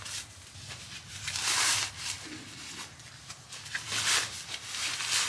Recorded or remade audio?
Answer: recorded